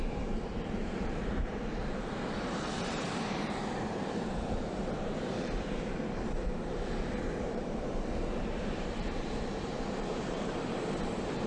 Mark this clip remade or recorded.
remade